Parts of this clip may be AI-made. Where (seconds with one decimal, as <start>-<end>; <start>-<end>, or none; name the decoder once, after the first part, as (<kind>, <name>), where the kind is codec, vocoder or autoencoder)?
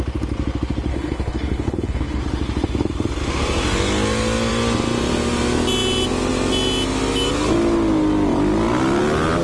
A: 0.9-2.2 (codec, HILCodec)